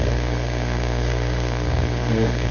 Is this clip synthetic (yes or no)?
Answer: yes